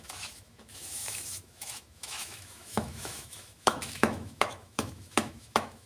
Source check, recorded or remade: remade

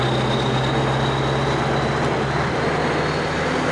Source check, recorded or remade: recorded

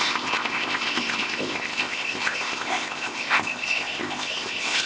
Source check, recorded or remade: remade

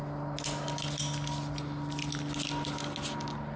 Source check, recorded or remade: recorded